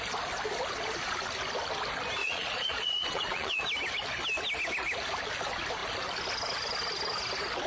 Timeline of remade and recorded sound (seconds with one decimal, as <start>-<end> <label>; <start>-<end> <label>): 0.0-2.2 recorded; 2.2-3.6 remade; 3.6-7.7 recorded